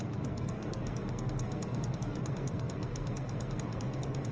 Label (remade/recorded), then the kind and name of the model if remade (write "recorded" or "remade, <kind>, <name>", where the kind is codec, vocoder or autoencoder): remade, codec, SNAC